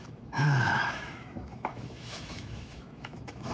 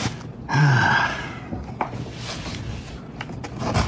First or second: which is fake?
first